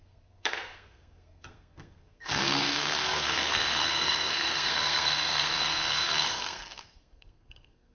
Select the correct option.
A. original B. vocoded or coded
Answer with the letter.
B